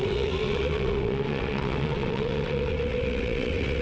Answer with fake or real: fake